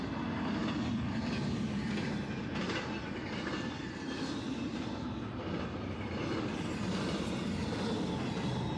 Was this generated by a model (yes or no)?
no